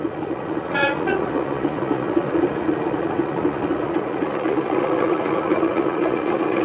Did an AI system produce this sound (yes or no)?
yes